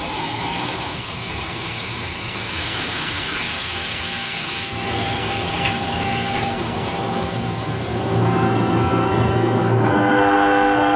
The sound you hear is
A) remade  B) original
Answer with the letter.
A